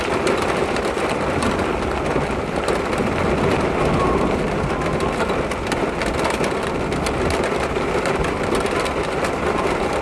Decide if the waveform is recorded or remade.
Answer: recorded